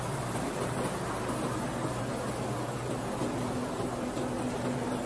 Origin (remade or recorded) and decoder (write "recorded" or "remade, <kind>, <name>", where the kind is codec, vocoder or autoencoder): recorded